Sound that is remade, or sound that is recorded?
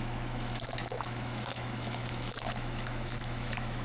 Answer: remade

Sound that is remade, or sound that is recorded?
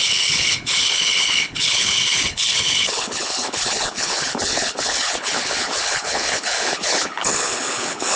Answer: remade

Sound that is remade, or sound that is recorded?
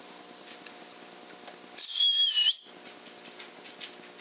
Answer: recorded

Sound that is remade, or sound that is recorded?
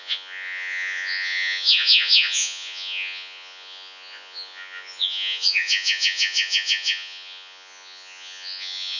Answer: remade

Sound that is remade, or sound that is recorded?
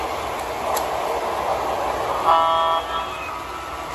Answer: recorded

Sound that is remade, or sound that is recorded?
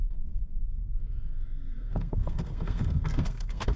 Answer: remade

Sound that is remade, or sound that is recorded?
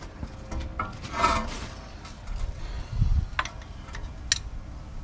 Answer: recorded